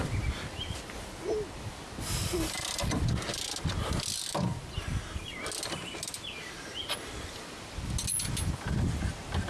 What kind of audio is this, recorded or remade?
recorded